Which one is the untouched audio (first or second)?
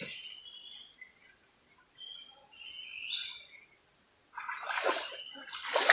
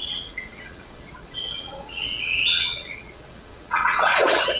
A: first